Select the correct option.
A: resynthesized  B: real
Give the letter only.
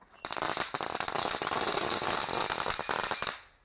B